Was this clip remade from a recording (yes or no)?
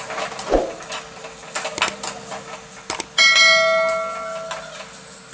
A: no